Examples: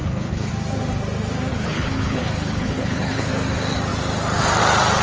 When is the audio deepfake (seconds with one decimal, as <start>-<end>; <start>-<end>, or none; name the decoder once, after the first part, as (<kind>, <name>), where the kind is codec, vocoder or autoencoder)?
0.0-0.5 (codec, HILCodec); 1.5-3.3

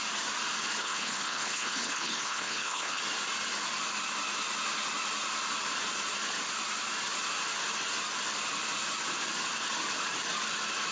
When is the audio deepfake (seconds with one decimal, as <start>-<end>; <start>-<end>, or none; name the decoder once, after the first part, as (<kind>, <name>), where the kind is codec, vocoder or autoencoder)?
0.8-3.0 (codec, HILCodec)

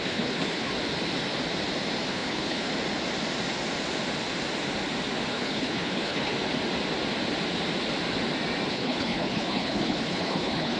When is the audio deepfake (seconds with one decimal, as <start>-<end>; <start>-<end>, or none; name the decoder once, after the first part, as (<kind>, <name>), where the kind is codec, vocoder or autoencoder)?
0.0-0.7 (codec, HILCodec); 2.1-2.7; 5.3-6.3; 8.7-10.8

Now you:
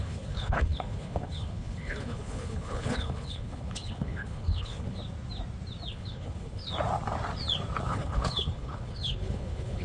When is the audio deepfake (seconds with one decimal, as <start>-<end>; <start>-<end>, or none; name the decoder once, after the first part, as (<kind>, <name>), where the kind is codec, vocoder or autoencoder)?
0.0-5.0 (codec, HILCodec); 5.9-6.7; 7.8-9.8

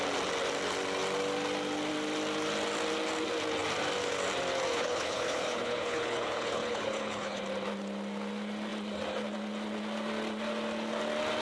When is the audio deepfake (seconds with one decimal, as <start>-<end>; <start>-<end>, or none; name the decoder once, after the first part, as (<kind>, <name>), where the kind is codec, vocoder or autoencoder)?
4.7-7.4 (codec, HILCodec)

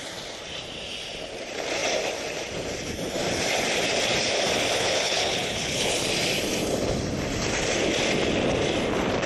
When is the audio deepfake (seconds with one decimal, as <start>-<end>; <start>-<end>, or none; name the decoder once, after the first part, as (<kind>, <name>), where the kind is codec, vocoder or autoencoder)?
4.8-5.9 (codec, HILCodec)

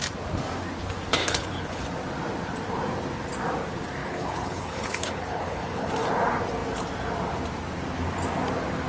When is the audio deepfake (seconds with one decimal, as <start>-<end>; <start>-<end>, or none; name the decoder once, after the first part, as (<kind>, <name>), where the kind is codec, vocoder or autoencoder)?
1.2-1.8 (codec, HILCodec); 4.0-5.9